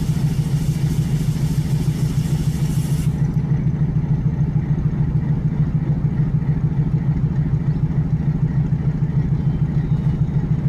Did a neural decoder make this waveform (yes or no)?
no